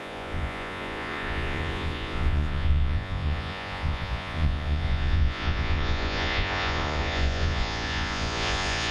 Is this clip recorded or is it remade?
remade